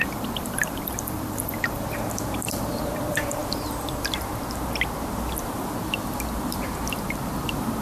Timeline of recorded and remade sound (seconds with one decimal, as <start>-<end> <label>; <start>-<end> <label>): 0.0-1.8 remade; 1.8-7.8 recorded